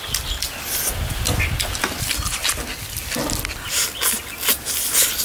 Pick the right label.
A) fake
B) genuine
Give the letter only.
B